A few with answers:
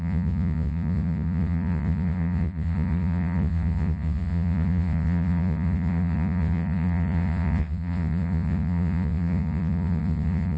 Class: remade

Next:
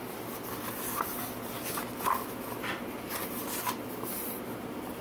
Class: recorded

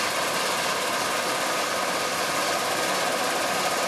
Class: recorded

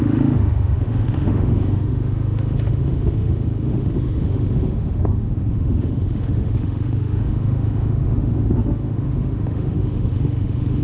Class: remade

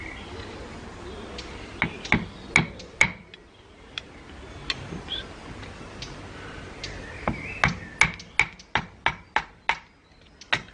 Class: recorded